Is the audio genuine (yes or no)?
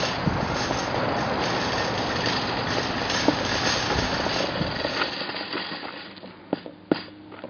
yes